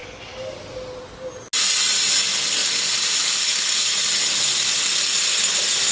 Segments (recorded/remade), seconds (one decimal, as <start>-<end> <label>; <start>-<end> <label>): 0.0-2.6 recorded; 2.6-4.0 remade; 4.0-5.9 recorded